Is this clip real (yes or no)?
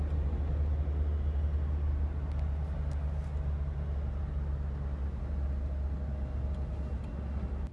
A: yes